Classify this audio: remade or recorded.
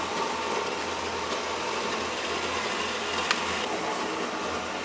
recorded